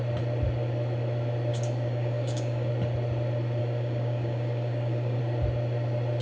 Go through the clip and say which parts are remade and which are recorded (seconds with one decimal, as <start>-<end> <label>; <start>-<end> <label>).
0.0-1.5 recorded; 1.5-2.7 remade; 2.7-3.6 recorded; 3.6-5.2 remade; 5.2-6.2 recorded